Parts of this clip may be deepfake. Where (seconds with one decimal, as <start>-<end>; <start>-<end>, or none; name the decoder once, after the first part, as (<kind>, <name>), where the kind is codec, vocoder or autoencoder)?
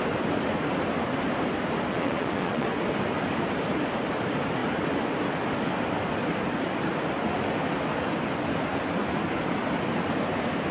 1.9-2.7 (vocoder, Vocos)